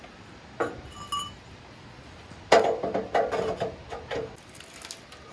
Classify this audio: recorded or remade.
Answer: recorded